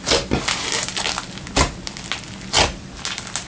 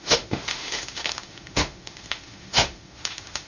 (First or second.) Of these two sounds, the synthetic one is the second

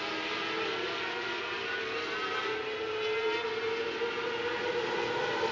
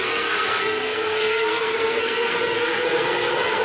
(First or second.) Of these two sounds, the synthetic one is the second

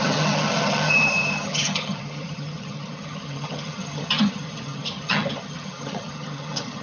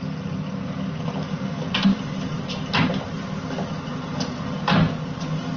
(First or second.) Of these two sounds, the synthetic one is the first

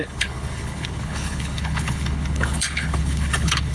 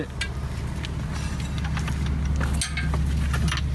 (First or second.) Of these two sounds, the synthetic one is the first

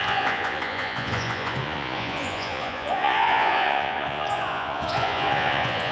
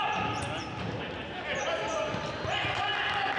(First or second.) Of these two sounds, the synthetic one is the first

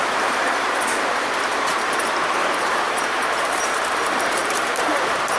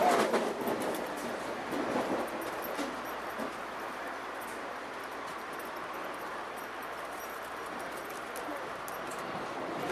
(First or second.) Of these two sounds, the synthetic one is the first